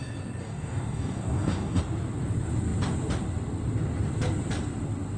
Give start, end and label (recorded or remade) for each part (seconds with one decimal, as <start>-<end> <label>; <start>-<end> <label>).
0.0-0.4 recorded; 0.4-1.8 remade; 1.8-5.2 recorded